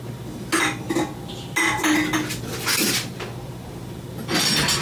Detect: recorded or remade recorded